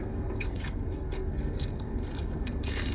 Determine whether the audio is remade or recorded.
remade